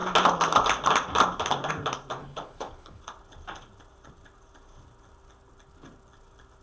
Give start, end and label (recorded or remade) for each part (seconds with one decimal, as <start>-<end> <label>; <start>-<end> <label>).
0.0-2.2 recorded; 2.2-3.0 remade; 3.0-6.6 recorded